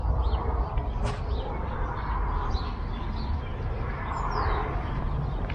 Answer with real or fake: real